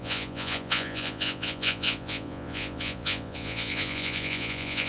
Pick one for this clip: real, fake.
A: fake